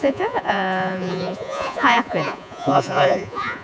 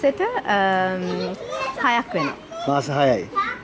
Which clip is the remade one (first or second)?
first